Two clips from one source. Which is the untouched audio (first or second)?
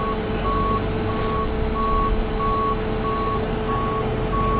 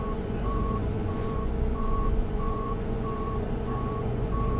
first